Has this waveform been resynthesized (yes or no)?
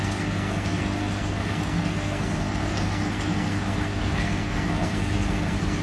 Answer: yes